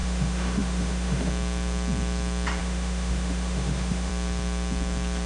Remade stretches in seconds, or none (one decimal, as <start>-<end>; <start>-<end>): 0.0-1.3; 2.6-4.1